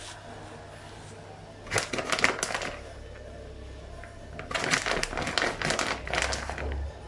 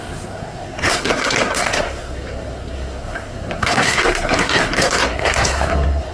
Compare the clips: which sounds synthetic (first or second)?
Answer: second